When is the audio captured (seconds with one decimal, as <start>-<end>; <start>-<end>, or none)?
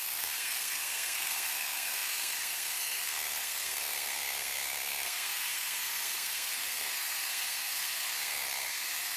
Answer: none